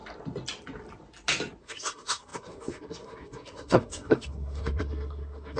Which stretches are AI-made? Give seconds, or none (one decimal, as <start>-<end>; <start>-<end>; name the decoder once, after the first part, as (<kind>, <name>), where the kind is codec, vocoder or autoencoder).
1.6-5.6 (codec, SNAC)

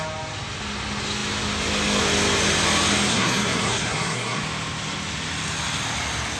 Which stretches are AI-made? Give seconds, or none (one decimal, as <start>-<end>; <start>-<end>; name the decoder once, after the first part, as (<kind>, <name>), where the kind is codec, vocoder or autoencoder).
3.1-4.4 (codec, SNAC)

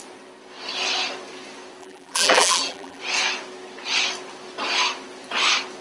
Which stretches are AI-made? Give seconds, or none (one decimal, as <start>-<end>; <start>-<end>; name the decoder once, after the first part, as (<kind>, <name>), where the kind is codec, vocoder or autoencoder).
1.8-3.0 (vocoder, BigVGAN v2)

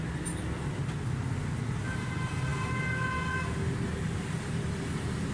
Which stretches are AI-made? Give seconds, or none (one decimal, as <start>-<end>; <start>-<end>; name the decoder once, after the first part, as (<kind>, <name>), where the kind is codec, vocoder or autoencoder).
none